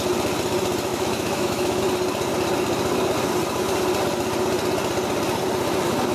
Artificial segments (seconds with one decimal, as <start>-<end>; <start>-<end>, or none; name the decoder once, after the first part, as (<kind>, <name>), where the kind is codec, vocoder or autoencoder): 0.9-1.8 (autoencoder, DAC-VAE)